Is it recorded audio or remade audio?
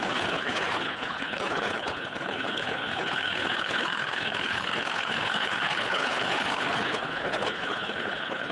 remade